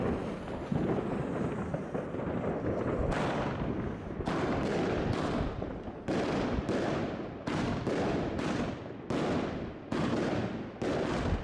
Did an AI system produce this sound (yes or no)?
no